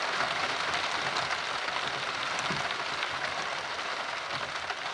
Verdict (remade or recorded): recorded